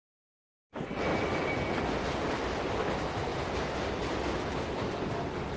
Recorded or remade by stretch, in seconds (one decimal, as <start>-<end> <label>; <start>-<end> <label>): 0.0-5.6 recorded